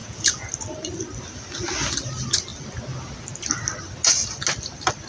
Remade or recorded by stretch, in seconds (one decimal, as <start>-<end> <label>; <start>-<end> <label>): 0.0-0.5 remade; 0.5-5.1 recorded